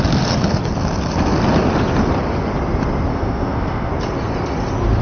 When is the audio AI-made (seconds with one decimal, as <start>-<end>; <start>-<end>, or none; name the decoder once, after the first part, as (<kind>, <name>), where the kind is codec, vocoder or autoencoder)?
3.1-3.9 (codec, SNAC)